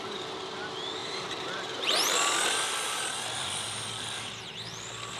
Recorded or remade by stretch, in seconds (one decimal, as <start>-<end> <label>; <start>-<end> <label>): 0.0-1.0 recorded; 1.0-1.8 remade; 1.8-5.2 recorded